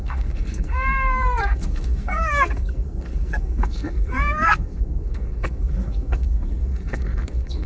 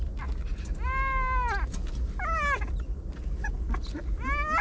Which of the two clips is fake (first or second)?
first